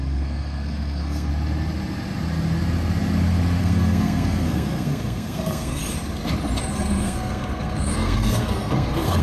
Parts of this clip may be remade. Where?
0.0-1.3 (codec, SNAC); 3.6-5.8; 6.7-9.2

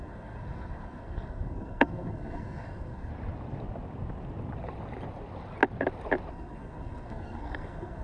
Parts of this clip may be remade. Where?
0.0-3.1 (codec, SNAC); 6.3-8.0

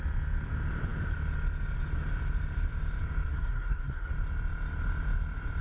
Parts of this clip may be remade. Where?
3.3-4.1 (codec, SNAC)

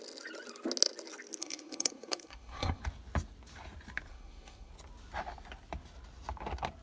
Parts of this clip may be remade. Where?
1.4-2.8 (codec, SNAC); 4.1-4.7

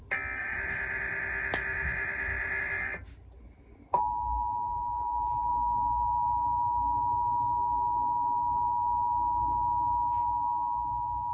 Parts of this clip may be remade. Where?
none

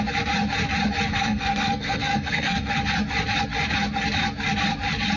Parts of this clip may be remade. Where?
1.1-2.7 (codec, SNAC)

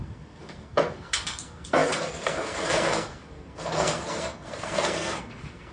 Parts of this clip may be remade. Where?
0.0-5.7 (codec, SNAC)